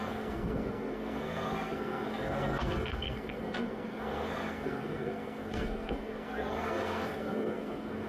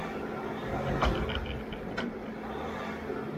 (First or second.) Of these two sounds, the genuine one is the second